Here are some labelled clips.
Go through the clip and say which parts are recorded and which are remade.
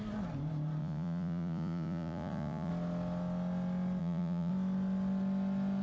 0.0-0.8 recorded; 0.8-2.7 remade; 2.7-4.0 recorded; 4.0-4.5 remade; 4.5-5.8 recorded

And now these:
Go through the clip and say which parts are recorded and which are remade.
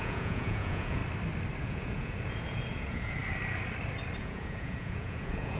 0.0-1.0 remade; 1.0-1.6 recorded; 1.6-3.2 remade; 3.2-4.2 recorded; 4.2-5.6 remade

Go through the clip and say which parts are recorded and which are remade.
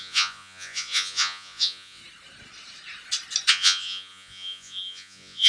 0.0-2.0 remade; 2.0-3.5 recorded; 3.5-5.5 remade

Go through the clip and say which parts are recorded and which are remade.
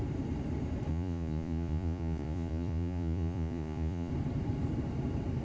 0.0-0.9 recorded; 0.9-4.1 remade; 4.1-5.4 recorded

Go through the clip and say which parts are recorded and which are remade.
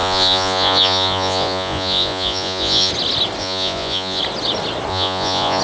0.0-2.9 remade; 2.9-3.4 recorded; 3.4-4.2 remade; 4.2-4.9 recorded; 4.9-5.6 remade